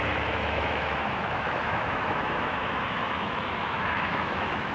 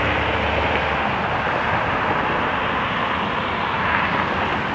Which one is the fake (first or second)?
first